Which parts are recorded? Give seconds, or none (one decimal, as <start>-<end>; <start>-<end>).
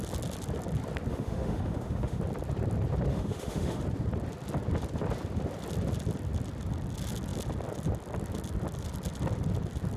0.0-1.1; 2.2-3.1; 3.8-10.0